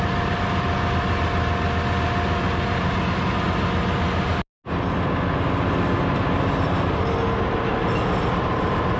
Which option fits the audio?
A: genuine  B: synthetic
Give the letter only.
A